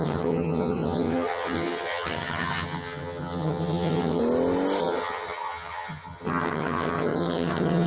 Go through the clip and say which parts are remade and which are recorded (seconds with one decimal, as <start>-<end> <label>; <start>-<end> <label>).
0.0-4.2 remade; 4.2-4.8 recorded; 4.8-7.9 remade